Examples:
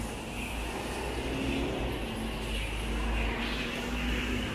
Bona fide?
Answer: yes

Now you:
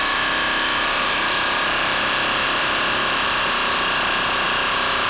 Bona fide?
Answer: no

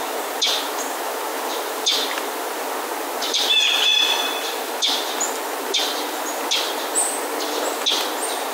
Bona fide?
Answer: yes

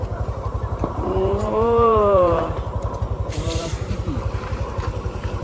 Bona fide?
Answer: no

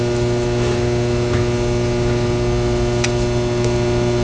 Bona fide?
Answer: yes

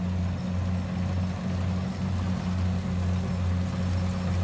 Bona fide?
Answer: yes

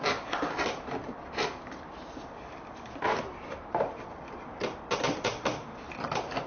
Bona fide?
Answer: yes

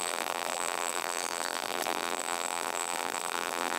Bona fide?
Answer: no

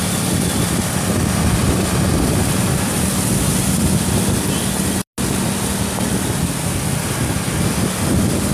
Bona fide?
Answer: yes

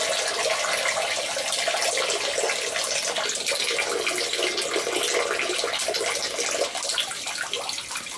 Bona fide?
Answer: yes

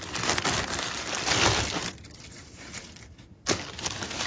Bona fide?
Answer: no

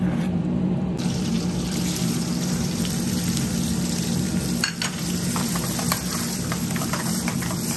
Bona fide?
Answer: no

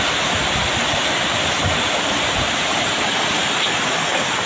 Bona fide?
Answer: yes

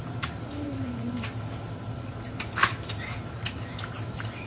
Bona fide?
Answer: no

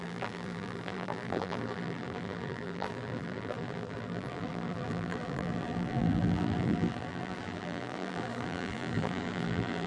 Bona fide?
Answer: no